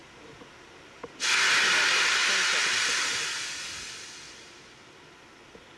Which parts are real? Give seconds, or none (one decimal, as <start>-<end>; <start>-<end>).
0.0-5.8